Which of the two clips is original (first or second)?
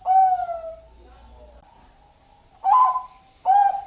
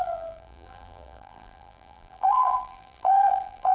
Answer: first